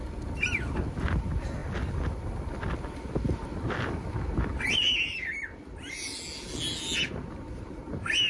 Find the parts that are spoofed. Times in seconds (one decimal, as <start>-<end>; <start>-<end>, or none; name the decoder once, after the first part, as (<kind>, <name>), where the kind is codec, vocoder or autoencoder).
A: none